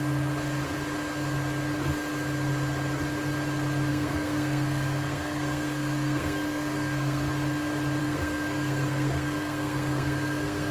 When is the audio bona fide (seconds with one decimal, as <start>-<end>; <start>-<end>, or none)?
0.0-3.9; 7.3-8.0